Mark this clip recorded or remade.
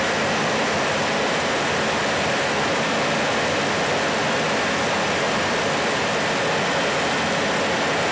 recorded